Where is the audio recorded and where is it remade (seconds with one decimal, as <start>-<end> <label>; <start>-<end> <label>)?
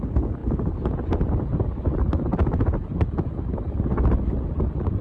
0.0-5.0 recorded